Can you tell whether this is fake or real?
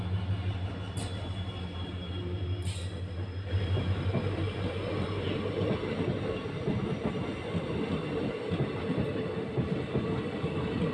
real